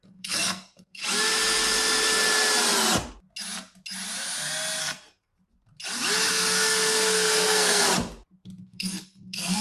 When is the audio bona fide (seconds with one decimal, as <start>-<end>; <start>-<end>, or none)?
1.0-4.8; 5.3-6.3; 7.9-8.6